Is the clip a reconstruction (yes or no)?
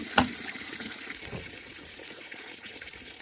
yes